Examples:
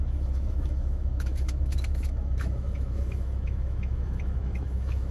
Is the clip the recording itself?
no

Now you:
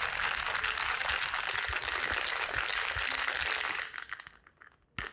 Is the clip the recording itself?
yes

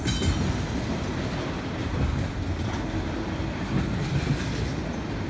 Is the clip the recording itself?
yes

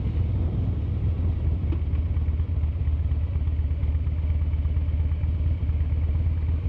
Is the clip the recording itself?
yes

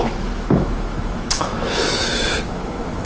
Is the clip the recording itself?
no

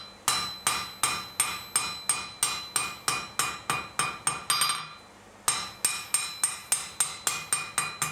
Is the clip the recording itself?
yes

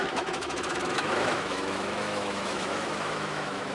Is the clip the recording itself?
no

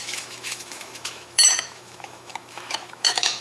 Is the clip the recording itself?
no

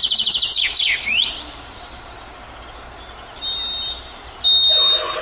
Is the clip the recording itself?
yes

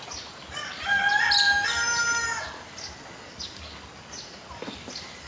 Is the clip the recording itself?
yes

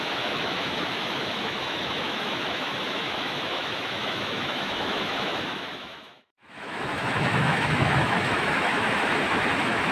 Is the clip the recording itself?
no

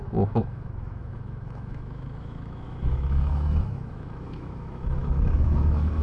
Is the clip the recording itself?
no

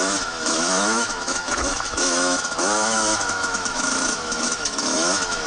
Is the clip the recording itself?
no